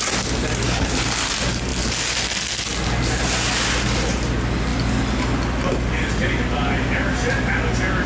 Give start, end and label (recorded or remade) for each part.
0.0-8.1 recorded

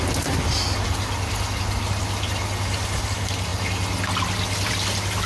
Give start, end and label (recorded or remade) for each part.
0.0-5.3 recorded

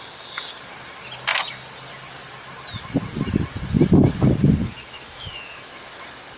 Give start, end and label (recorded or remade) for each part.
0.0-4.6 recorded; 4.6-5.7 remade; 5.7-6.4 recorded